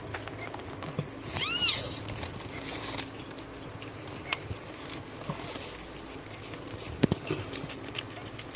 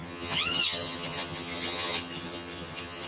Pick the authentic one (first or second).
first